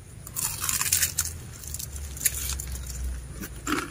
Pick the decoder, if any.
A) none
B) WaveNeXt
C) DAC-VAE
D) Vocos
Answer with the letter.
A